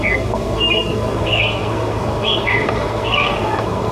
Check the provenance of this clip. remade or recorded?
remade